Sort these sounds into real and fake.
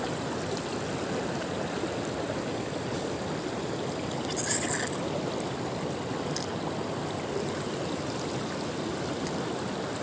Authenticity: real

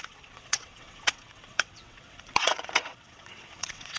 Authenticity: fake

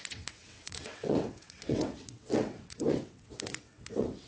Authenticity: fake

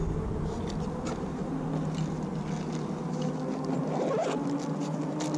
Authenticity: real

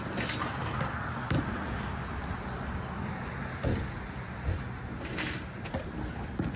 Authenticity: real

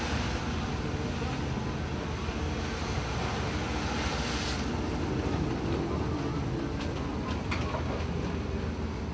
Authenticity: real